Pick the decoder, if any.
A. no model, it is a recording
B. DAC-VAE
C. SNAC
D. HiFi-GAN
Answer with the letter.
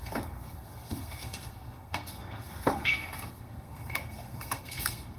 C